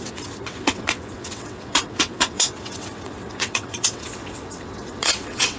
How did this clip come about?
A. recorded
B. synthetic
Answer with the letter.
B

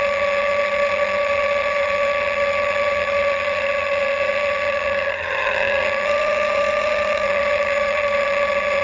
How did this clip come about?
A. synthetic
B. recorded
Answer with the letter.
A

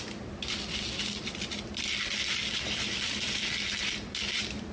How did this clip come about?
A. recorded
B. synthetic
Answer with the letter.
A